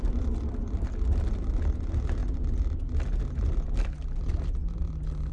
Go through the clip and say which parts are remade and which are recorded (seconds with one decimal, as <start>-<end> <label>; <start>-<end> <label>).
0.0-5.3 recorded